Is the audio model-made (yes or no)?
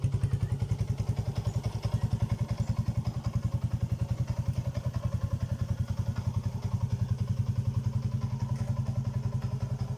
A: no